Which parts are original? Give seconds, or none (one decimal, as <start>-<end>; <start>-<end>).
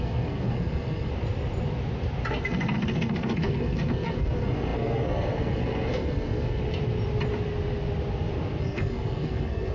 1.1-2.4; 6.6-8.6